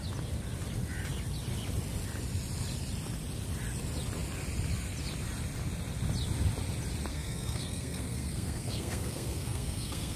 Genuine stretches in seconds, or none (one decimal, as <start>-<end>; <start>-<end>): 0.0-7.1